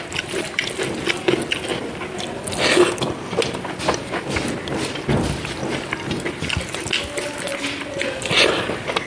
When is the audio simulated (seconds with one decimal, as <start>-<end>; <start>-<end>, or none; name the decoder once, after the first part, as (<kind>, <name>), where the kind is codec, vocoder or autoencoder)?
none